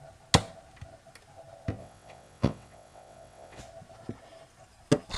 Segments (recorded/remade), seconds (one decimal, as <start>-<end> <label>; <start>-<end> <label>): 0.0-1.8 recorded; 1.8-3.6 remade; 3.6-5.2 recorded